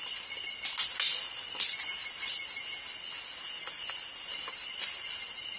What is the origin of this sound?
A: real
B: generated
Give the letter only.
A